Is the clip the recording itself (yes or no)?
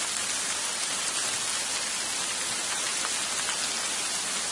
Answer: yes